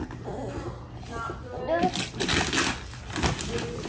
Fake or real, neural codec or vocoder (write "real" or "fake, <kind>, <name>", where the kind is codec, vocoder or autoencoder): real